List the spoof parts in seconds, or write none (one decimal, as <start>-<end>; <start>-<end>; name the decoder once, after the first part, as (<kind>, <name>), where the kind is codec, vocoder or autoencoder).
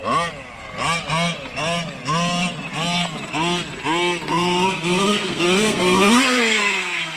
4.3-7.2 (codec, SNAC)